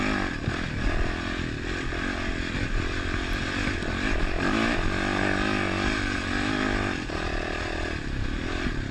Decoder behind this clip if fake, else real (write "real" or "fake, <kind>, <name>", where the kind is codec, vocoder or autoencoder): real